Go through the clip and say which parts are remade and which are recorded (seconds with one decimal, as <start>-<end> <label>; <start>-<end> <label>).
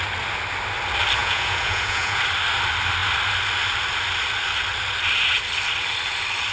0.0-1.2 recorded; 1.2-2.2 remade; 2.2-6.5 recorded